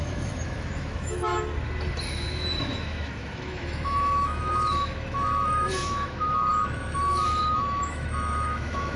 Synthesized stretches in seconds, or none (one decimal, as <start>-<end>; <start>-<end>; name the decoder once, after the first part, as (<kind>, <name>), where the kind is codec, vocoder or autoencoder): 0.0-1.3 (autoencoder, DAC-VAE); 2.6-9.0

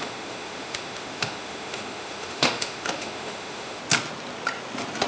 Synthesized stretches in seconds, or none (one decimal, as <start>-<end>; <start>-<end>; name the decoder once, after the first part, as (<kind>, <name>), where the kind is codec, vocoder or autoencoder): 0.0-3.8 (autoencoder, DAC-VAE)